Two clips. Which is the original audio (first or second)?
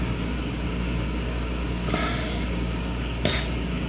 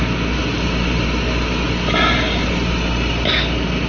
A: second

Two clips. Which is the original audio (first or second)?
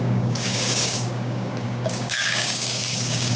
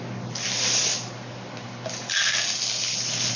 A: second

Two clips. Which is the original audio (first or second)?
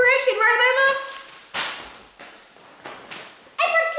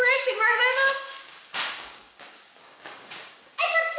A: first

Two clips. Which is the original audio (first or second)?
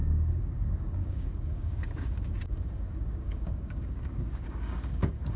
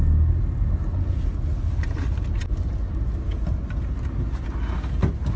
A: second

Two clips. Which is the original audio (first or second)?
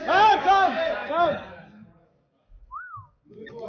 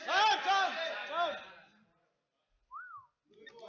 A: second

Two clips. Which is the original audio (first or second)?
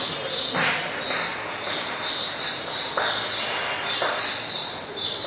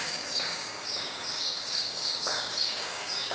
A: first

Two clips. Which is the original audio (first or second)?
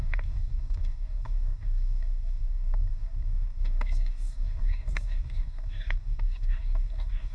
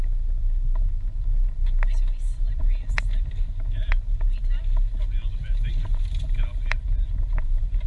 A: second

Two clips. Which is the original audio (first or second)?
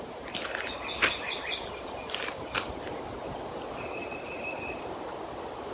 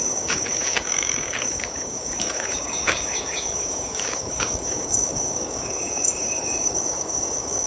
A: first